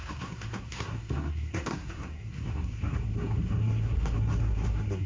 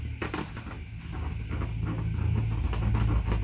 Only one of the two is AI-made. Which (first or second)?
first